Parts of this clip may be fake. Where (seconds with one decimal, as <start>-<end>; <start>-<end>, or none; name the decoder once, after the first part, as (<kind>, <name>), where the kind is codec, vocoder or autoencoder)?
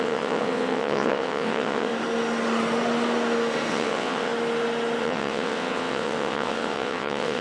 0.0-1.9 (vocoder, WaveNeXt); 3.7-4.3; 5.0-7.4